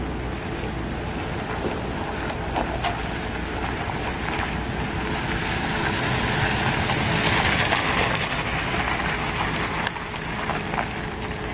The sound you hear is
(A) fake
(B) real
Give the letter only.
B